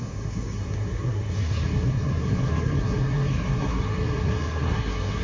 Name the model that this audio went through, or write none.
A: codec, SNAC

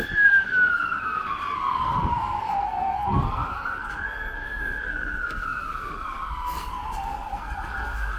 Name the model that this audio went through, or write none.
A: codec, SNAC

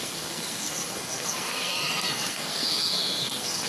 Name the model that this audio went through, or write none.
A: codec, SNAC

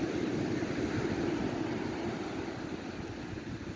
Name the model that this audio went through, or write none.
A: none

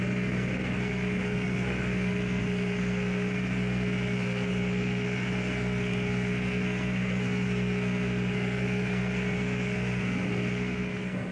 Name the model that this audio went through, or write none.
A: codec, SNAC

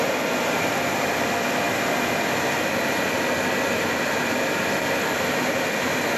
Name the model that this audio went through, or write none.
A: none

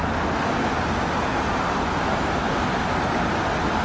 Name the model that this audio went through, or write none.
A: none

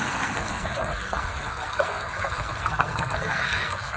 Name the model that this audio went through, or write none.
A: codec, SNAC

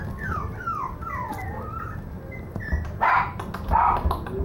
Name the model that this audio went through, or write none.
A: none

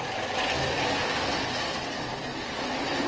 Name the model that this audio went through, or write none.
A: none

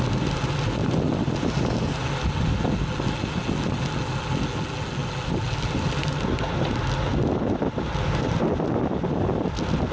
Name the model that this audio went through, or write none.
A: none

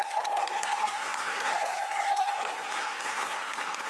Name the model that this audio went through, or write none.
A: codec, SNAC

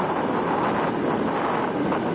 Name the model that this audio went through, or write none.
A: none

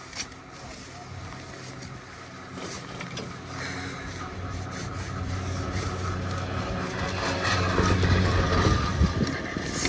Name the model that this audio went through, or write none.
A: none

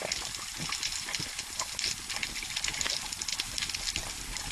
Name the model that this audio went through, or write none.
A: none